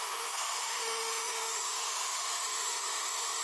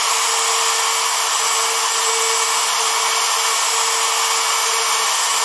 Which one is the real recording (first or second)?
second